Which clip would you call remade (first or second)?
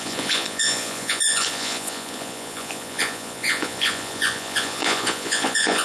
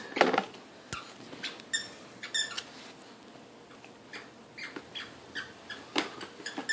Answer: first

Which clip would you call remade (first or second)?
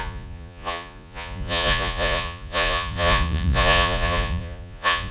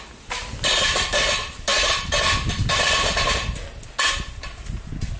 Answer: first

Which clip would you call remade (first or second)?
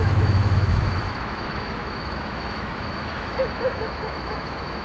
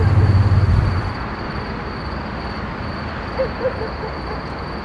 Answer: first